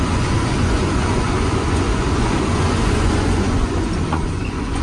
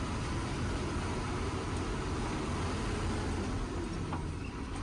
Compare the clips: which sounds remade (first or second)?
first